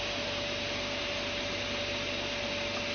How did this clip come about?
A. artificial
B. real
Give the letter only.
B